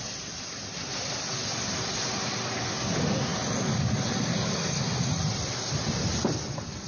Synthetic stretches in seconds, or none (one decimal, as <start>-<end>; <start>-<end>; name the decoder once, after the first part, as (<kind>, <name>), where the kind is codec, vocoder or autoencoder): none